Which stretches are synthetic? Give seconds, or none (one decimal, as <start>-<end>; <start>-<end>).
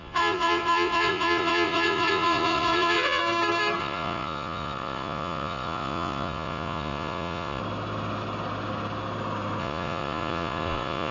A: 0.0-3.2; 3.8-7.6; 9.6-11.1